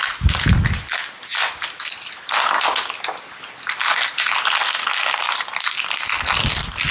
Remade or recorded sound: recorded